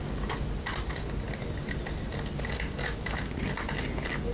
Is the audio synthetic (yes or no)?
no